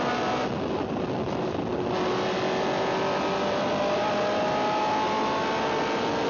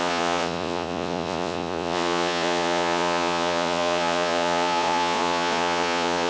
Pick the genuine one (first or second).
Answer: first